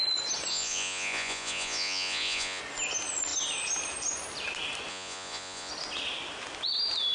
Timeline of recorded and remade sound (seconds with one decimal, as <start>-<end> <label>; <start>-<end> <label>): 0.0-0.5 recorded; 0.5-2.6 remade; 2.6-4.9 recorded; 4.9-5.7 remade; 5.7-7.1 recorded